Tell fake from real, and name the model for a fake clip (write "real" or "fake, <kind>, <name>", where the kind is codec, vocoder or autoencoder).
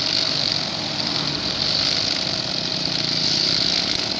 real